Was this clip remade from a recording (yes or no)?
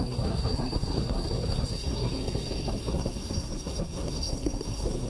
yes